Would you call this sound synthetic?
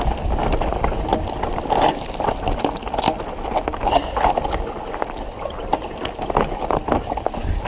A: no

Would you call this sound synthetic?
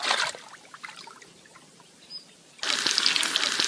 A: no